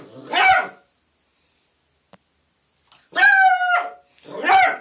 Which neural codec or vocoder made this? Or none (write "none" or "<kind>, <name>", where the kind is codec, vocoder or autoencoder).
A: none